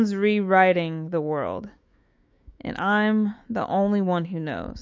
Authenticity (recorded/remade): remade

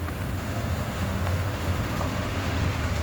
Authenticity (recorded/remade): remade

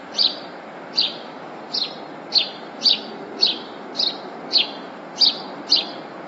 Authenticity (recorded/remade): recorded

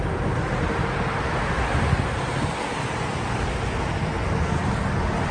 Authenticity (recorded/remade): recorded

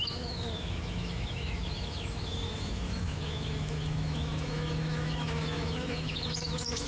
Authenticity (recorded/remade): remade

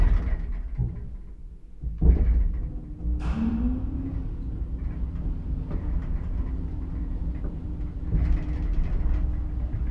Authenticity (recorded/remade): recorded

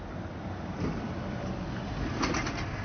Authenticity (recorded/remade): recorded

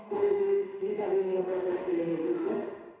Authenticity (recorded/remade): remade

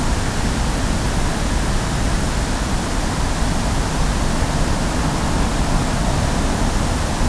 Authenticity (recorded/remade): recorded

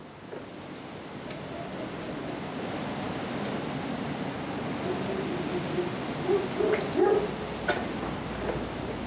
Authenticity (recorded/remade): recorded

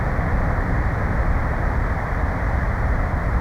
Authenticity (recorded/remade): recorded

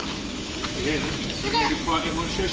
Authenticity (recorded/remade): remade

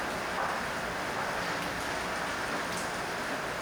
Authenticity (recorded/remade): recorded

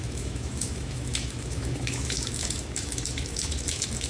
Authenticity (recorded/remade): remade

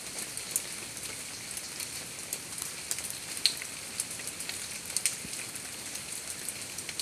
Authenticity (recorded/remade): recorded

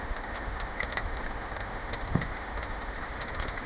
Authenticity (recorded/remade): remade